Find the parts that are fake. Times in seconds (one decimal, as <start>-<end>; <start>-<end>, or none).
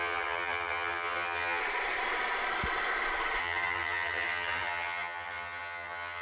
0.0-1.6; 3.4-6.2